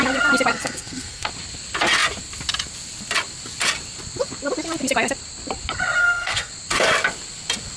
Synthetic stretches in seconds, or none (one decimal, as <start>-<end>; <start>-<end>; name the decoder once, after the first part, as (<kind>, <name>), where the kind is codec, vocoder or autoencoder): 0.5-1.3 (codec, SNAC); 6.0-6.5